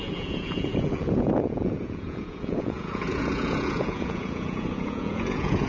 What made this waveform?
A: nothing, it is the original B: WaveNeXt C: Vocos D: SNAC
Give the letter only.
C